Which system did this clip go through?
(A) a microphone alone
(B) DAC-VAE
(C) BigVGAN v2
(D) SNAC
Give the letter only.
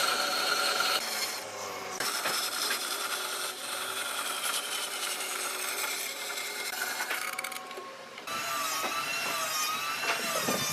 C